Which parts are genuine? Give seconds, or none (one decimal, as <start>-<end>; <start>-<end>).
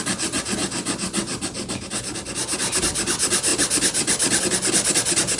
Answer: 0.0-5.4